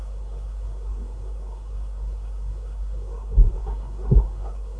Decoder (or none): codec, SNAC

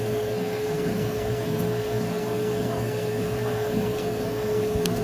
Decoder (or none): codec, SNAC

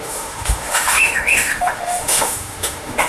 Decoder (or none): autoencoder, DAC-VAE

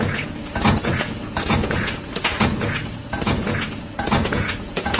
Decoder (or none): vocoder, Vocos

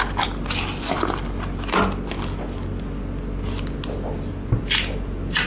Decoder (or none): none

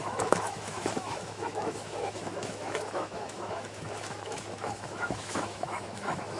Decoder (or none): autoencoder, DAC-VAE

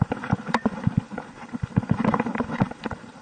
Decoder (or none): vocoder, BigVGAN v2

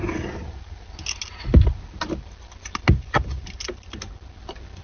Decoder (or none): none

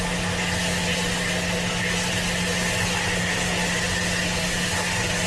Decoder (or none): none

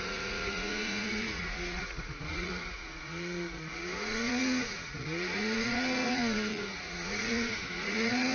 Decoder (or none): vocoder, Vocos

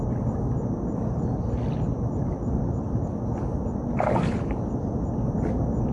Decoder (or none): none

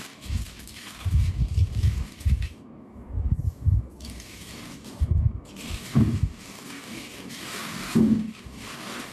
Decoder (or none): codec, DAC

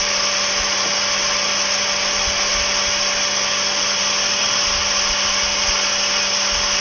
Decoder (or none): none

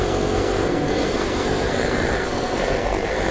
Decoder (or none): codec, SNAC